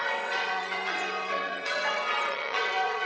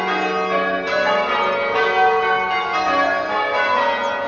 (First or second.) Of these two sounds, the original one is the second